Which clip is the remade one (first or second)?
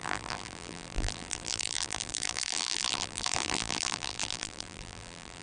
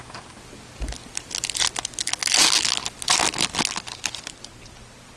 first